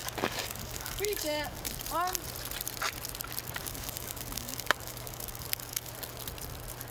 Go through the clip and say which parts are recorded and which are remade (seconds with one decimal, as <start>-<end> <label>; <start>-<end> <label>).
0.0-1.7 remade; 1.7-3.6 recorded; 3.6-5.9 remade; 5.9-6.9 recorded